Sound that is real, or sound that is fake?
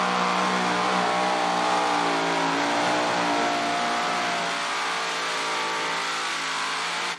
real